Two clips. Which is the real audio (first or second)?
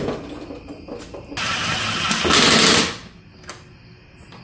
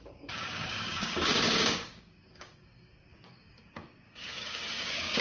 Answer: first